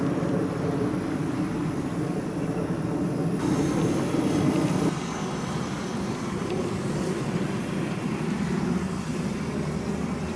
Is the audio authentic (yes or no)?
no